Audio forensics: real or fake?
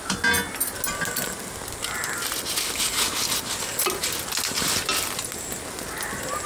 real